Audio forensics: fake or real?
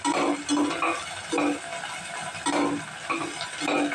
real